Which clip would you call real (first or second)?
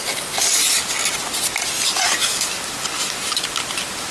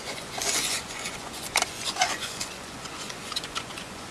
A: first